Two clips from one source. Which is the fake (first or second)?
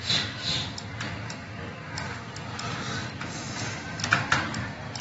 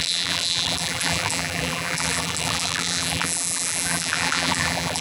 second